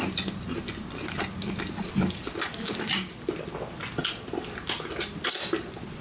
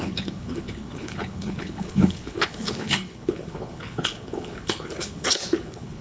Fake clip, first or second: second